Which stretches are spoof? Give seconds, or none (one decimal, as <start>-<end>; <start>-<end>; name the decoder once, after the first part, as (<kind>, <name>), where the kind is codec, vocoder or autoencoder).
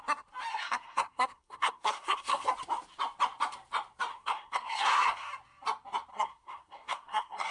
0.5-2.5 (codec, SNAC); 4.1-5.3; 6.1-7.5